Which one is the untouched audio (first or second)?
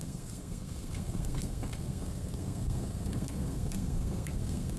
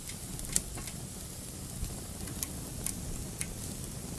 second